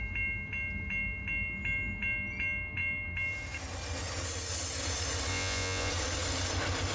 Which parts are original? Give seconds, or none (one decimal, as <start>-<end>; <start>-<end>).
0.0-5.3; 5.9-6.9